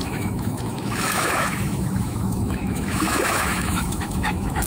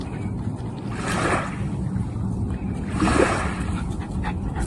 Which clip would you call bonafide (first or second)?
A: second